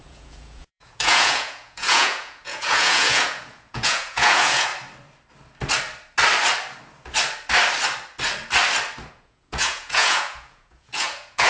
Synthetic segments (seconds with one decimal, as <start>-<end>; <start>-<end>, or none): 0.0-4.7; 9.1-11.5